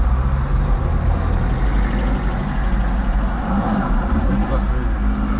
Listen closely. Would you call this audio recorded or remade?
recorded